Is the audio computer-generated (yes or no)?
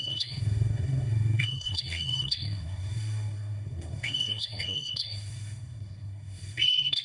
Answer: yes